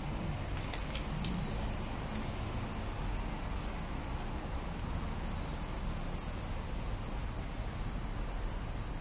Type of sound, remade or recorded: recorded